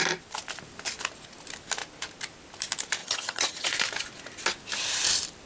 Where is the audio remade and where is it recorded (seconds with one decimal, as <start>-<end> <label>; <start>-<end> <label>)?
0.0-3.0 recorded; 3.0-3.7 remade; 3.7-5.5 recorded